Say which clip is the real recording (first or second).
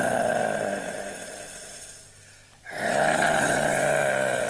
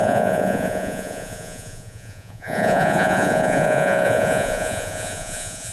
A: first